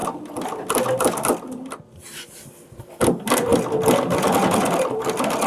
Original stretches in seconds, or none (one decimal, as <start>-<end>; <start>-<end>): 0.0-5.5